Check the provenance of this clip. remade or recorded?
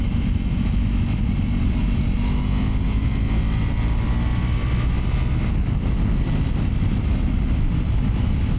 recorded